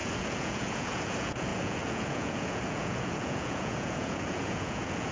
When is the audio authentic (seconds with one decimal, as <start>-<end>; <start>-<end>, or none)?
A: none